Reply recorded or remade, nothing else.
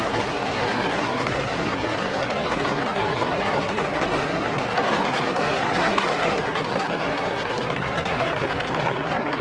remade